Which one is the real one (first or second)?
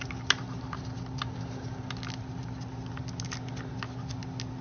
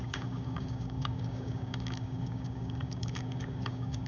first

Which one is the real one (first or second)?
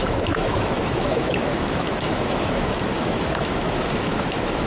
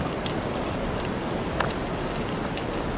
second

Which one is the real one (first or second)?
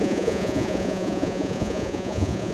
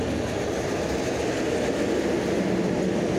second